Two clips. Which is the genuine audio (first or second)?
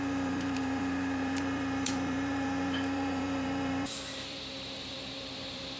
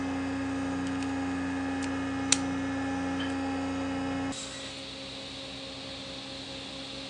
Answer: second